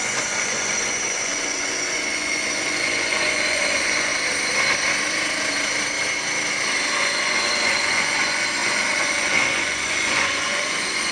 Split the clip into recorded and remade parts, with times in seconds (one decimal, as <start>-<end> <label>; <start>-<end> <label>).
0.0-4.1 remade; 4.1-7.0 recorded; 7.0-11.1 remade